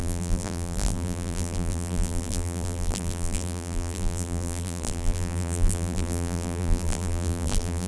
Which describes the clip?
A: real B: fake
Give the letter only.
B